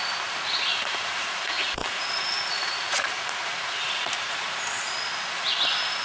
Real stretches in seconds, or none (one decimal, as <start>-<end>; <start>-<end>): 0.0-0.7; 4.3-6.0